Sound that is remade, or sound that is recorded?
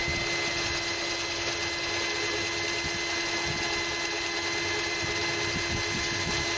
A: recorded